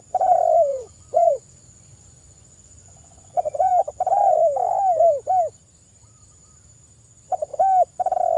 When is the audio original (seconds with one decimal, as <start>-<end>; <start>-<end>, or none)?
0.0-0.7; 3.7-8.4